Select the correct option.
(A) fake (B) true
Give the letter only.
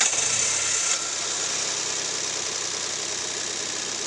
B